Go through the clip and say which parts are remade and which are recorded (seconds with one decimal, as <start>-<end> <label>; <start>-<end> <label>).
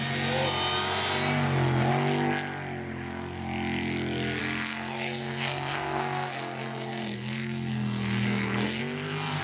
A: 0.0-4.4 recorded; 4.4-8.8 remade; 8.8-9.4 recorded